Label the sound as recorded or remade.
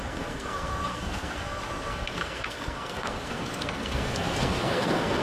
remade